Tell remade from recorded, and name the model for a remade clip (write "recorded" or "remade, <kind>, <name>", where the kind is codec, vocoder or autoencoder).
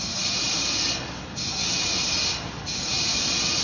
recorded